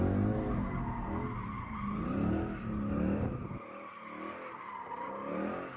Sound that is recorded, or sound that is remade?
recorded